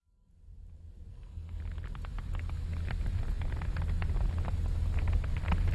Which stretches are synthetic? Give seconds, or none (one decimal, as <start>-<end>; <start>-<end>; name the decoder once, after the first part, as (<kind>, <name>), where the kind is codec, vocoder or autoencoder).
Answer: 1.1-1.6 (codec, SNAC)